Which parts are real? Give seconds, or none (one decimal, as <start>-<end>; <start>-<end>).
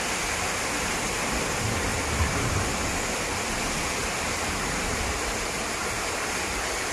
0.0-1.9; 2.5-4.0; 6.1-6.9